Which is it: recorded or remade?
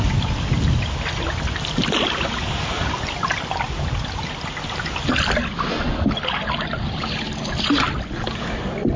recorded